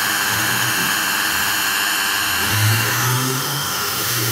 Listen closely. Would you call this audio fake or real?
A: fake